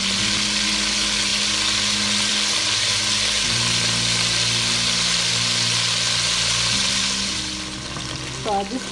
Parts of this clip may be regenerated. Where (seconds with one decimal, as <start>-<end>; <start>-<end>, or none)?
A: none

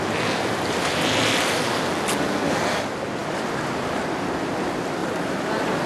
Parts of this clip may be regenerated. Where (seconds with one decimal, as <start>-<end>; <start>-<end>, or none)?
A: none

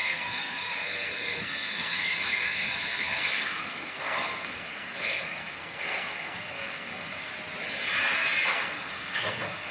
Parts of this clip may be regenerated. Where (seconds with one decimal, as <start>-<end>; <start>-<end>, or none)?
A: 0.0-7.3; 8.5-9.7

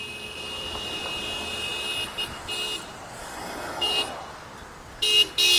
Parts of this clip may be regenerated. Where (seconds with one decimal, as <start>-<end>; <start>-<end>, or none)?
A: 3.2-3.9

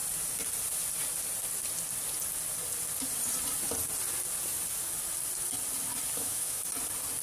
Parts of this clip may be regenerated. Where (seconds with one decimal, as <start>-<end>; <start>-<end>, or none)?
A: 6.2-6.7

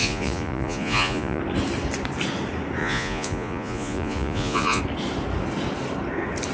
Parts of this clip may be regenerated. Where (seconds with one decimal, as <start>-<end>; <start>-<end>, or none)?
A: 0.0-1.4; 2.8-4.8

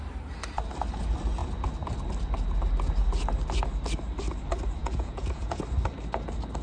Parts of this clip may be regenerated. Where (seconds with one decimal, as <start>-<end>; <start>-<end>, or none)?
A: 4.8-5.6

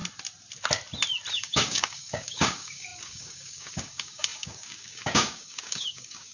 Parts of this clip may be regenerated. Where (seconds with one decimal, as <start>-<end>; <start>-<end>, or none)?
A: 1.3-6.3